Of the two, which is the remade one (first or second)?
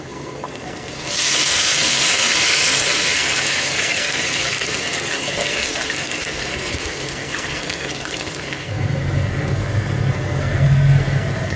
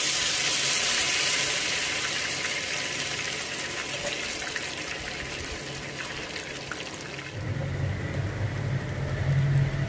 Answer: first